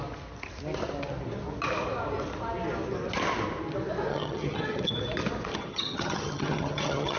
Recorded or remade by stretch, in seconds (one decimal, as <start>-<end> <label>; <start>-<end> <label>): 0.0-4.1 recorded; 4.1-4.9 remade; 4.9-5.5 recorded; 5.5-7.2 remade

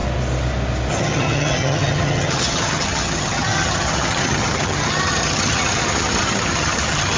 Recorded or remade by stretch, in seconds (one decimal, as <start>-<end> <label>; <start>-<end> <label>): 0.0-0.9 recorded; 0.9-7.2 remade

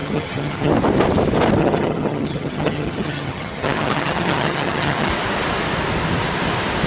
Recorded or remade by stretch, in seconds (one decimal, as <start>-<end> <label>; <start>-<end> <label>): 0.0-0.7 remade; 0.7-1.6 recorded; 1.6-5.1 remade; 5.1-6.9 recorded